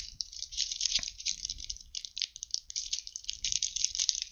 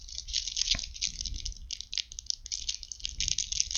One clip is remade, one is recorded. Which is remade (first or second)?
first